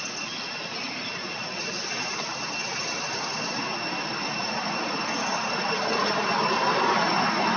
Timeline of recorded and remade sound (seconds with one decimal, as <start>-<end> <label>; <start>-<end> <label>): 0.0-7.6 recorded